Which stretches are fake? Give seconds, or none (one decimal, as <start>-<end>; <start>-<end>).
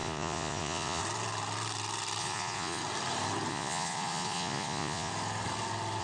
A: 0.0-1.0; 2.2-2.8; 3.5-5.1